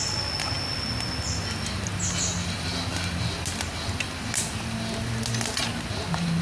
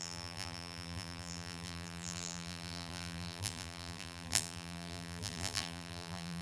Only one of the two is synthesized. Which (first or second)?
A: second